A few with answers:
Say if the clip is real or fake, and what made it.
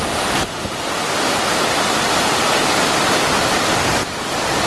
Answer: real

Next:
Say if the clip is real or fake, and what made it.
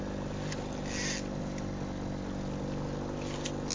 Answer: real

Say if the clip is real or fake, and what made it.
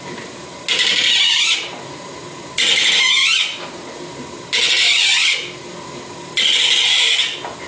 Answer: real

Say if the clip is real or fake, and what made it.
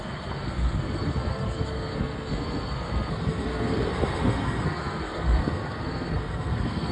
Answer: fake, codec, SNAC